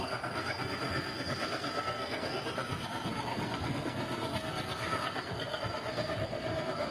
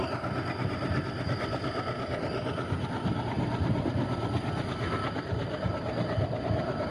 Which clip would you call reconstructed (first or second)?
first